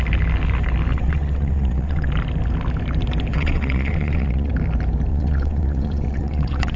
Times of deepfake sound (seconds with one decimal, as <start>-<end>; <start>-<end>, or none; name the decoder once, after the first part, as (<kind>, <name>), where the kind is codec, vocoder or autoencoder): 0.9-2.1 (vocoder, WaveNeXt); 3.3-4.5; 5.1-6.8